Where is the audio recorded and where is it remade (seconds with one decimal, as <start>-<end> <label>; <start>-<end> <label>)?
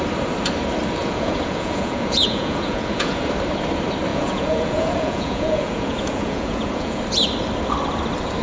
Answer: 0.0-1.0 recorded; 1.0-3.2 remade; 3.2-4.1 recorded; 4.1-7.0 remade; 7.0-8.4 recorded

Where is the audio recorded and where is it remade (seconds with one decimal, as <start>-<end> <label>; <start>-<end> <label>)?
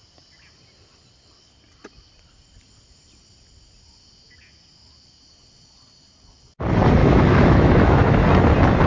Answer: 0.0-7.0 recorded; 7.0-8.2 remade; 8.2-8.9 recorded